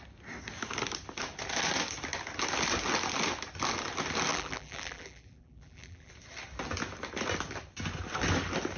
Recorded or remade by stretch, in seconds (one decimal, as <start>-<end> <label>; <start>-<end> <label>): 0.0-4.3 recorded; 4.3-6.1 remade; 6.1-8.8 recorded